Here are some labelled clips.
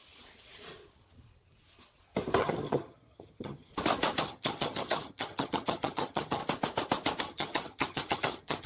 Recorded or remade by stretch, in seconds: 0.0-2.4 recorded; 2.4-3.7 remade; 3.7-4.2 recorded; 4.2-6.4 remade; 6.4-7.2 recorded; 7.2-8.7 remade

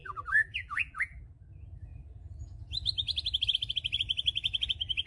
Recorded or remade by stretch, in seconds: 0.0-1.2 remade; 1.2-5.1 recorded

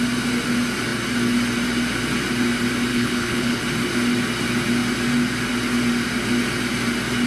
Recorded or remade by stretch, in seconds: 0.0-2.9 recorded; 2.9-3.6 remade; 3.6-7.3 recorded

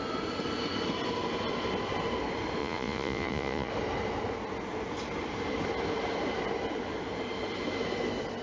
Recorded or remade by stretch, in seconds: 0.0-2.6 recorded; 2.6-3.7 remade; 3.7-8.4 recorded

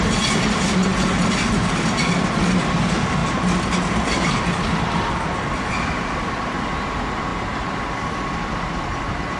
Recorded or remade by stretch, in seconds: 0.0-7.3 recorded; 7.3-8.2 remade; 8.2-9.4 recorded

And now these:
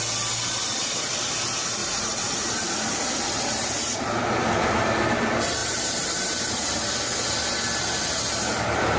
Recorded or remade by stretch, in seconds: 0.0-1.8 recorded; 1.8-4.5 remade; 4.5-5.6 recorded; 5.6-6.8 remade; 6.8-9.0 recorded